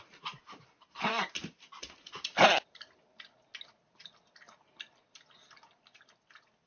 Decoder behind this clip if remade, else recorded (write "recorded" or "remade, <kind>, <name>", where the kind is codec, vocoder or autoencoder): recorded